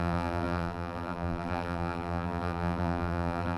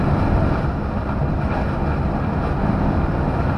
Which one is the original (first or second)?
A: second